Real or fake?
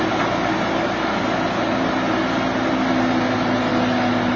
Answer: real